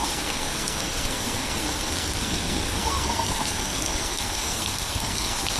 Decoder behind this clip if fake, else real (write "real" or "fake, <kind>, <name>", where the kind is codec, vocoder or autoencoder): fake, codec, SNAC